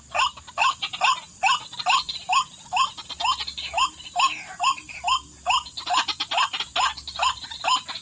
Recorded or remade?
recorded